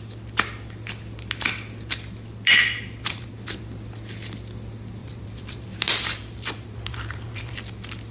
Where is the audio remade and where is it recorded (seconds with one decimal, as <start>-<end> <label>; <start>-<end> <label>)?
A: 0.0-3.0 recorded; 3.0-3.6 remade; 3.6-5.0 recorded; 5.0-7.5 remade; 7.5-8.1 recorded